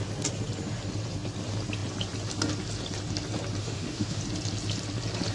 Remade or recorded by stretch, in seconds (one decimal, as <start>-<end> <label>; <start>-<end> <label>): 0.0-3.6 recorded; 3.6-4.2 remade; 4.2-5.3 recorded